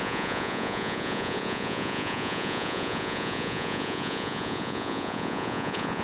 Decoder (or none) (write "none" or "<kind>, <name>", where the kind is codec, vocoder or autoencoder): vocoder, Vocos